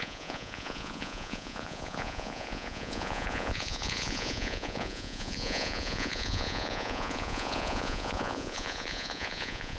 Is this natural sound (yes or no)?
no